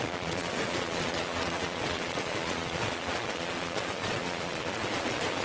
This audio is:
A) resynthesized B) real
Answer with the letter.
A